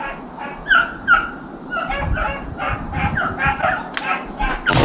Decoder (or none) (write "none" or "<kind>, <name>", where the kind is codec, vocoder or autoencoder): none